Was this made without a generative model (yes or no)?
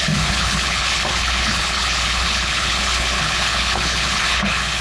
no